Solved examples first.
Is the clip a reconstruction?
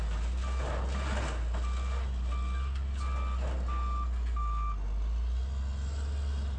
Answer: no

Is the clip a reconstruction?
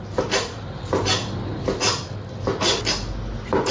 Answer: no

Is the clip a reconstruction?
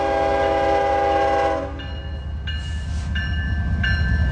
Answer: no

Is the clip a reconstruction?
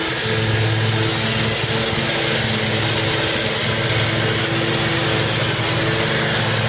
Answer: no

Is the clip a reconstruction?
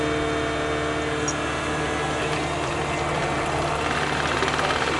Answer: no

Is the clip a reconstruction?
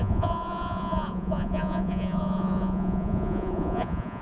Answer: yes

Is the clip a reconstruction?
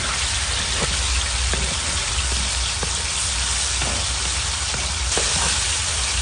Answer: no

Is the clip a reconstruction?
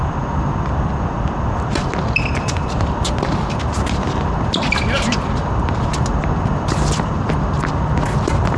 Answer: no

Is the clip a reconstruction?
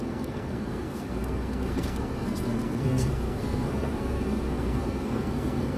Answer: yes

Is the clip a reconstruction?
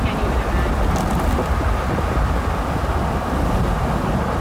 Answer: no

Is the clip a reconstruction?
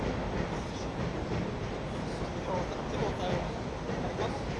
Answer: no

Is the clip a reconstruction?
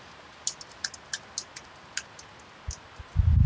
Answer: no